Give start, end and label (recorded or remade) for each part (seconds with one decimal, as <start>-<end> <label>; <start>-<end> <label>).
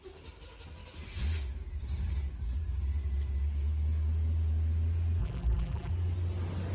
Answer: 0.0-5.2 recorded; 5.2-5.9 remade; 5.9-6.7 recorded